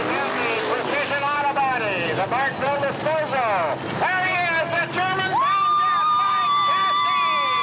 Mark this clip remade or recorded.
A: recorded